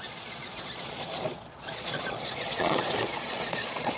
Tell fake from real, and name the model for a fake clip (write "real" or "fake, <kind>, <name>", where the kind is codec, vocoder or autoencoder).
fake, vocoder, Vocos